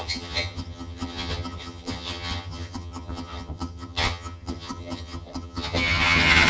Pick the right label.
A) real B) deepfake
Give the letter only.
B